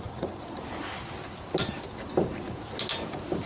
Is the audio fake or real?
real